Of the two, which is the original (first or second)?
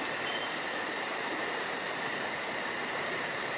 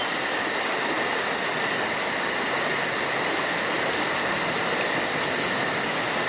second